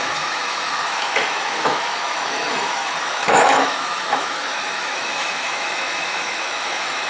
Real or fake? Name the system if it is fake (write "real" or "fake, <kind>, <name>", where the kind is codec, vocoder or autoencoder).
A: fake, autoencoder, DAC-VAE